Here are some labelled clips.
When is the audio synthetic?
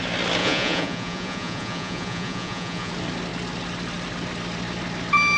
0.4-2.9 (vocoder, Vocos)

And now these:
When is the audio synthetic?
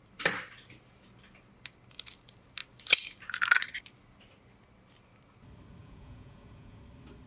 5.8-6.8 (vocoder, Vocos)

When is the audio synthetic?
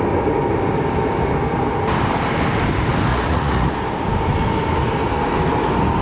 3.1-3.7 (vocoder, Vocos)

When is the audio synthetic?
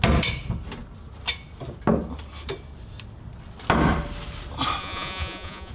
4.8-5.7 (vocoder, Vocos)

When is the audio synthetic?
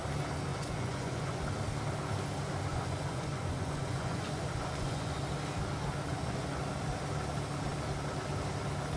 0.5-1.4 (vocoder, Vocos); 2.7-5.2; 6.1-6.6